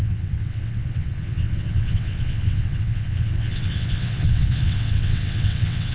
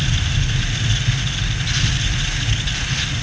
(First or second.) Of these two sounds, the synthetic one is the first